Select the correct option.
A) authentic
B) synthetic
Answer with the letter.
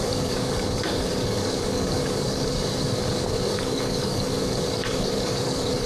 B